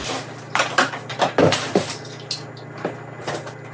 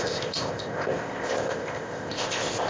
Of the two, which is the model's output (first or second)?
second